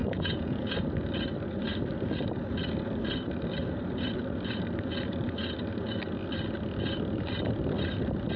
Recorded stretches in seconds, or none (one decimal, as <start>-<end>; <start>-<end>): 0.7-8.4